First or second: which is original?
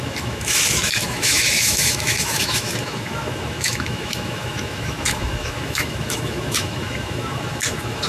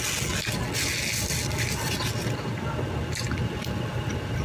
second